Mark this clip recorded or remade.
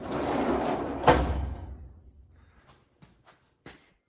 recorded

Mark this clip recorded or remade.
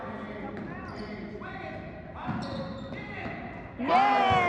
recorded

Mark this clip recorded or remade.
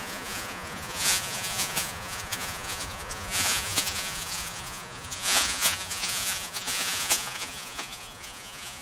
remade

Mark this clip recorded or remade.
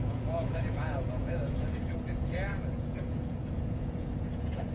remade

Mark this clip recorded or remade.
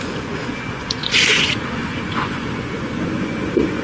remade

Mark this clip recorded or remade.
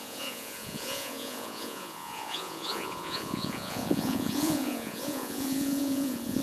remade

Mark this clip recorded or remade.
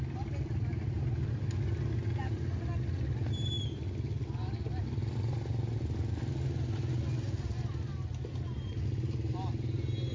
recorded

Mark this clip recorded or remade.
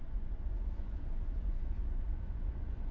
remade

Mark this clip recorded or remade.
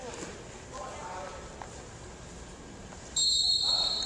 recorded